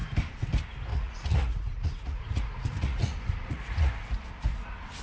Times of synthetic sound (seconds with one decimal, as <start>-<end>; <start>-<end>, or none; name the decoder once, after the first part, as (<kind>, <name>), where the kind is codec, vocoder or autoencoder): 0.9-3.9 (vocoder, Vocos)